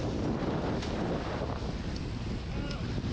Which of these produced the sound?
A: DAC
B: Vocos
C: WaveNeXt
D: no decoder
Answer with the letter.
D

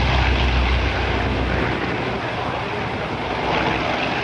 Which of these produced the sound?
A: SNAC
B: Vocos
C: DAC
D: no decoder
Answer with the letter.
D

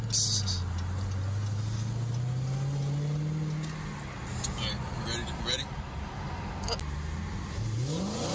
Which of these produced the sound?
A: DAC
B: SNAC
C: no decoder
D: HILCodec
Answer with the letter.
C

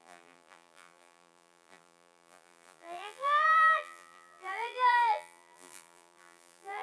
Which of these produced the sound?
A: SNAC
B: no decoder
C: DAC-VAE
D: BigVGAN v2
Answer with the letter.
D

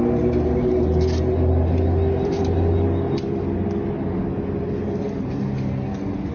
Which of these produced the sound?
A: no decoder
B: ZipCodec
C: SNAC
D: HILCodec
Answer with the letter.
A